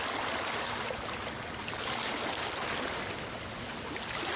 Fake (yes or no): no